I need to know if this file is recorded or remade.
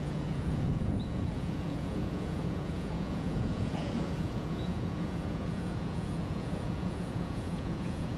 remade